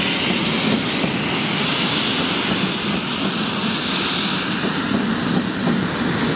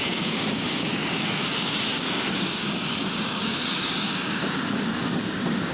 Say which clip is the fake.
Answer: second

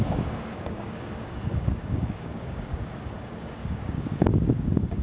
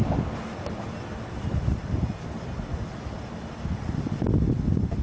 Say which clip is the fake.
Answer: first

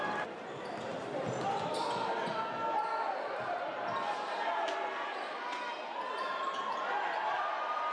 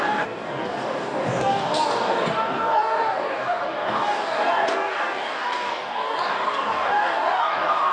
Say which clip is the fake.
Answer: second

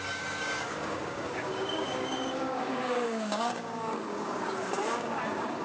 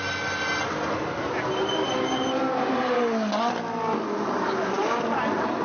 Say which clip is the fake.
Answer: first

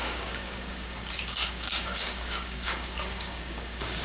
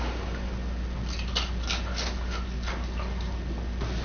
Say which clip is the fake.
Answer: first